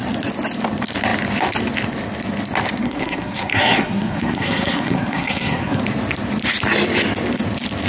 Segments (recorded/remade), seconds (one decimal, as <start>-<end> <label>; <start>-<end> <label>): 0.0-2.8 recorded; 2.8-5.8 remade; 5.8-7.9 recorded